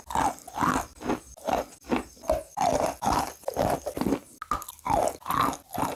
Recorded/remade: recorded